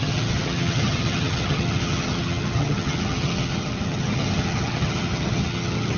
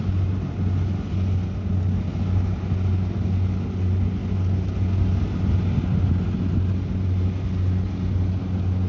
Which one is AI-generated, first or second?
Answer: first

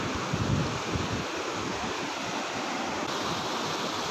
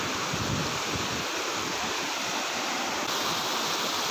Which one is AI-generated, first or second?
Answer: second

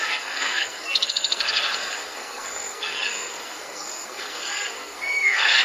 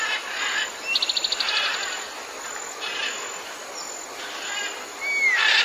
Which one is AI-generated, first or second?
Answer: first